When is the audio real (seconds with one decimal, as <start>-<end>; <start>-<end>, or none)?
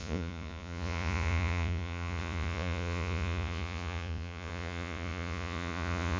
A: none